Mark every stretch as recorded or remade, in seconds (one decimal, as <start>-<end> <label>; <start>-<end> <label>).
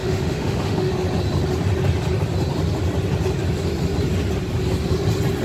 0.0-0.9 remade; 0.9-5.4 recorded